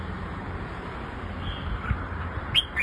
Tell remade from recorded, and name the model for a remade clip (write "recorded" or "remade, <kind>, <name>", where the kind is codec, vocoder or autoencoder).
remade, vocoder, BigVGAN v2